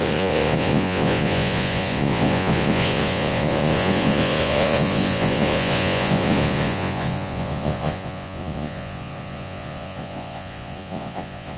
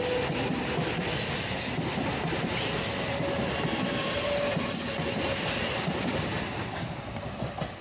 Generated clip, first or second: first